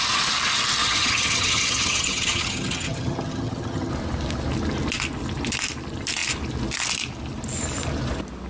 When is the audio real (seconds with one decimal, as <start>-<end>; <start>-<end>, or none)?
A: 0.0-0.8; 3.9-8.5